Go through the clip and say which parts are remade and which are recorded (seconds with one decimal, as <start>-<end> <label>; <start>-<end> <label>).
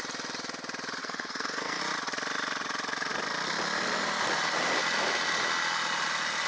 0.0-1.0 recorded; 1.0-1.8 remade; 1.8-6.5 recorded